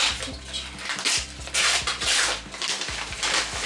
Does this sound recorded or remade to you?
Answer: recorded